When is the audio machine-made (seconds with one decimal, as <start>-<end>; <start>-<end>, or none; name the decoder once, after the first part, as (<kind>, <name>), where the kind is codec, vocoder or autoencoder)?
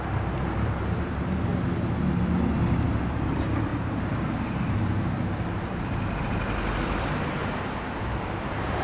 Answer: 0.0-1.5 (vocoder, BigVGAN v2); 3.1-7.4; 8.0-8.8